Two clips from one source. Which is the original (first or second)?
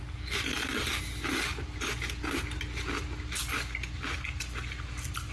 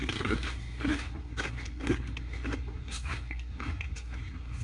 first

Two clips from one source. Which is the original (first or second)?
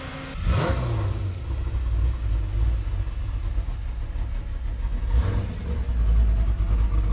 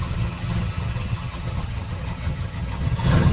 first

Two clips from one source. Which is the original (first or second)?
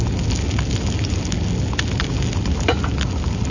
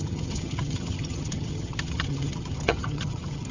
first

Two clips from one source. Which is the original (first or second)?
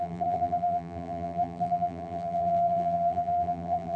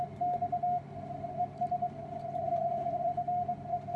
second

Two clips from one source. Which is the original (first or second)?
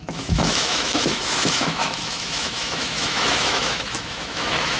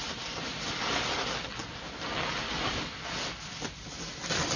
second